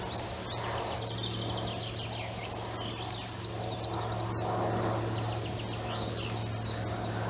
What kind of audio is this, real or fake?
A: real